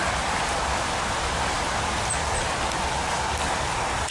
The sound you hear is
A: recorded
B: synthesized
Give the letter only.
A